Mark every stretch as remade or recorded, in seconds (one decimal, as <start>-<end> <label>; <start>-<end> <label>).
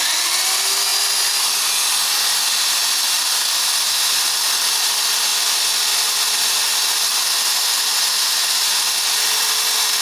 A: 0.0-10.0 recorded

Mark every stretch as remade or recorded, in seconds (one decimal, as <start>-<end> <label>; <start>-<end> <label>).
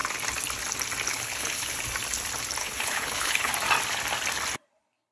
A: 0.0-1.1 recorded; 1.1-1.8 remade; 1.8-2.6 recorded; 2.6-3.5 remade; 3.5-5.1 recorded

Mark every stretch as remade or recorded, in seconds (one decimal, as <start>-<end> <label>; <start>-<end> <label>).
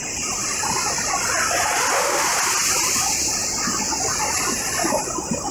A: 0.0-5.5 recorded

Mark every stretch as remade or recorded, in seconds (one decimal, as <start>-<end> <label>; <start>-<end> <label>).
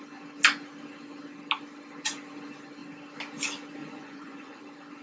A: 0.0-3.8 recorded; 3.8-4.6 remade; 4.6-5.0 recorded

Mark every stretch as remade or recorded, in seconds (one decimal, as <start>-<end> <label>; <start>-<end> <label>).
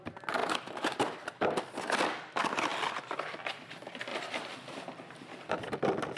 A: 0.0-0.4 recorded; 0.4-1.6 remade; 1.6-4.1 recorded; 4.1-5.5 remade; 5.5-6.2 recorded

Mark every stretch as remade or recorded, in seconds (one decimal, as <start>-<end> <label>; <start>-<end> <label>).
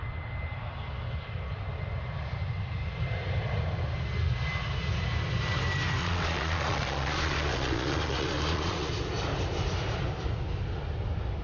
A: 0.0-6.0 recorded; 6.0-8.9 remade; 8.9-11.4 recorded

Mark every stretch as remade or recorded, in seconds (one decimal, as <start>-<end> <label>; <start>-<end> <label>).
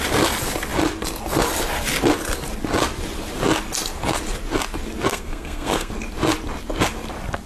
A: 0.0-5.1 recorded; 5.1-5.9 remade; 5.9-7.5 recorded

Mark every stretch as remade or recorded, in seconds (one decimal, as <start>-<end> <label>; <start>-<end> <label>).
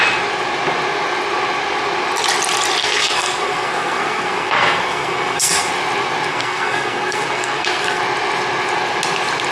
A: 0.0-2.8 recorded; 2.8-5.7 remade; 5.7-6.3 recorded; 6.3-8.0 remade; 8.0-9.5 recorded